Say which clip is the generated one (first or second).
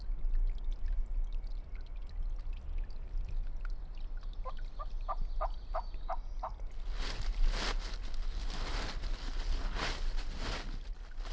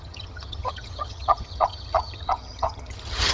second